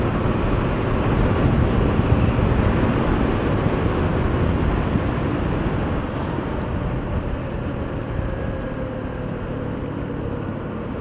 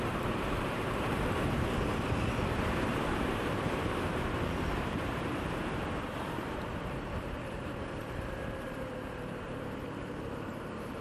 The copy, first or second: second